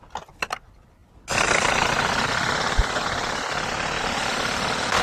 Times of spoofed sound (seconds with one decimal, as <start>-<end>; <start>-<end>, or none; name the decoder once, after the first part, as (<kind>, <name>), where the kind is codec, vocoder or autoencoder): 1.0-4.0 (vocoder, BigVGAN v2)